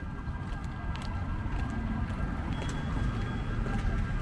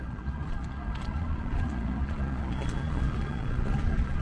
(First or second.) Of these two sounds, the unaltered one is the first